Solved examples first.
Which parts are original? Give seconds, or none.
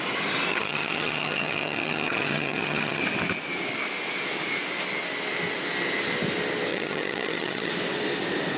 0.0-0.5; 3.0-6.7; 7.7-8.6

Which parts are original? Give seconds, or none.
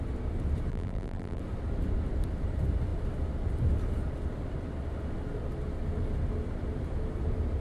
0.0-0.7; 1.4-7.6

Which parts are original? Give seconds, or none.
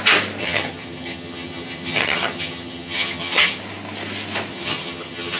0.0-0.4; 3.6-4.5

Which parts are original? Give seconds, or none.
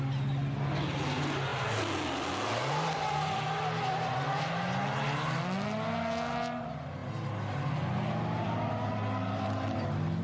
0.0-10.2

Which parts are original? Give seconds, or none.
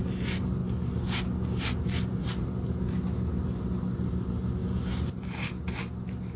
0.0-6.4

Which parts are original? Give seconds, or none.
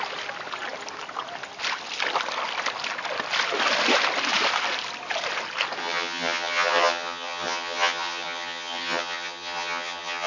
0.0-5.8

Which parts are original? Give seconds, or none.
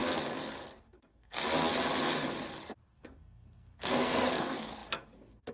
0.0-0.8; 1.4-2.9